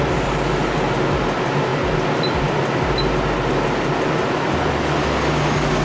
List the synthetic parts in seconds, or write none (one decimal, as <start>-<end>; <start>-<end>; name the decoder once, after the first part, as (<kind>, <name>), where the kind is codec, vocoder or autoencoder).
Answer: none